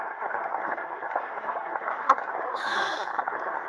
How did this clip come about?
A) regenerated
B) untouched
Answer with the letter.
A